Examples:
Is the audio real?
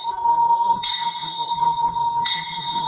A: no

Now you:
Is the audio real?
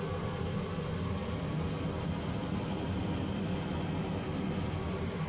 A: yes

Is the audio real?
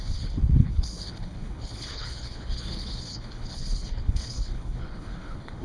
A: no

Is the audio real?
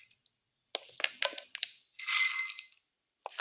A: yes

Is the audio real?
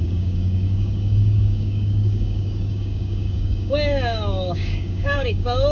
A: no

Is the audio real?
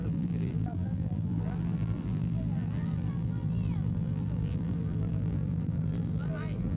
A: no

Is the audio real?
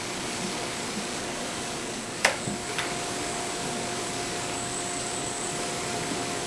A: no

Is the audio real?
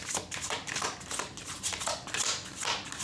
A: yes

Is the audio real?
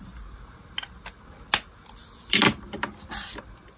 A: yes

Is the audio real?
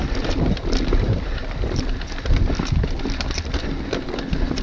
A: yes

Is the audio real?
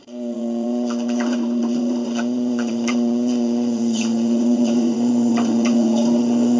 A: no